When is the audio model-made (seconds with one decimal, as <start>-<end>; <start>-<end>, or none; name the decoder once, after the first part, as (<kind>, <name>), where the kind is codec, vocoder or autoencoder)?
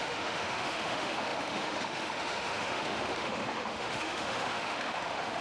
0.0-5.4 (autoencoder, DAC-VAE)